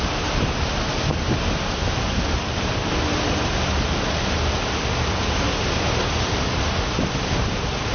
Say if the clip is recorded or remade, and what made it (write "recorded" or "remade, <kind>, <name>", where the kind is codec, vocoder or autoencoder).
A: recorded